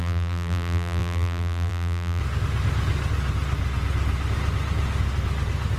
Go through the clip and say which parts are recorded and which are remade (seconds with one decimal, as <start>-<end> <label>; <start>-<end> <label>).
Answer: 0.0-2.2 remade; 2.2-5.8 recorded